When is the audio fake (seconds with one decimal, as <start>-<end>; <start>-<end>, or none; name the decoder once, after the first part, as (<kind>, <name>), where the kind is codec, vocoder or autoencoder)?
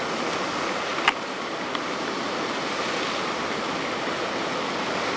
0.9-1.5 (vocoder, BigVGAN v2)